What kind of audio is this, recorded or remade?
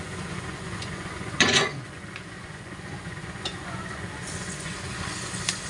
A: remade